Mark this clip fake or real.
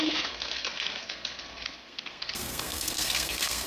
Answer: fake